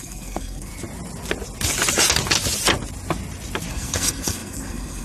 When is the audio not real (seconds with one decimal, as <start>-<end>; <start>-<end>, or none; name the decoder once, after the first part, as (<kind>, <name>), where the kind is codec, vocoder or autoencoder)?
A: 0.0-0.7 (codec, SNAC); 3.7-5.0